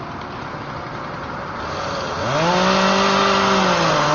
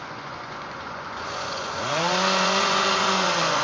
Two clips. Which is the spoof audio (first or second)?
second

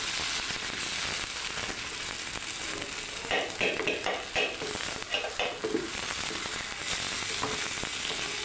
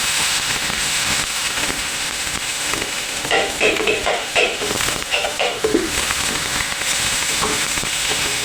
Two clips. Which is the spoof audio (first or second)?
second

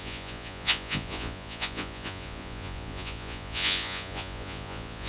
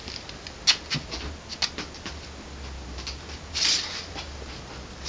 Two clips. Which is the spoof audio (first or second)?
first